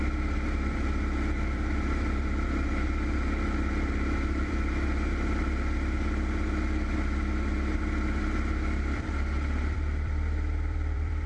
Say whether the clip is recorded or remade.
remade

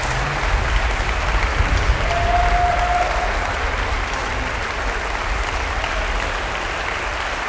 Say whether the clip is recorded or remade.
recorded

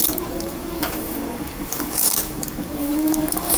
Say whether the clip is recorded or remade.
remade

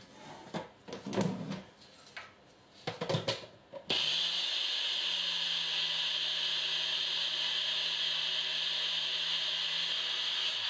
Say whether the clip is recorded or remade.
recorded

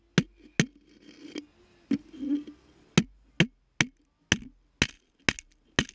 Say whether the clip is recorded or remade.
recorded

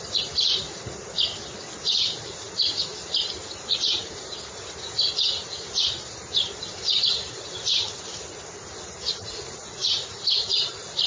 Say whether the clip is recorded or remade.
recorded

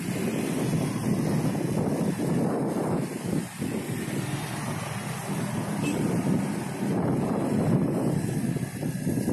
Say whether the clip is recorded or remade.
recorded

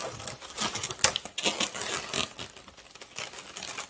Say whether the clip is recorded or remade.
recorded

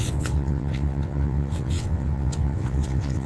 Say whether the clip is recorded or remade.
remade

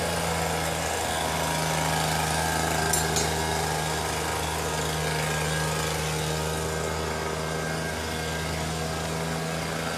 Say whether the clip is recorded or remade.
recorded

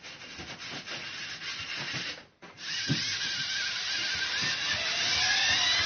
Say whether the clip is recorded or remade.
recorded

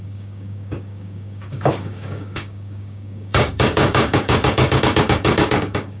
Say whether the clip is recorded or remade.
remade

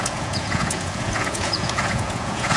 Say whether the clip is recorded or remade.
remade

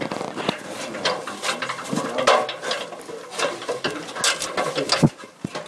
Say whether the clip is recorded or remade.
recorded